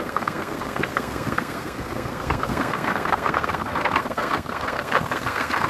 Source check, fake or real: fake